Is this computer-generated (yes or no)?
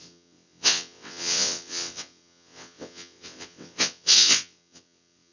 yes